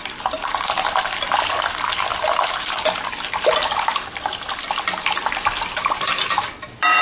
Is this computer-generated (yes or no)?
no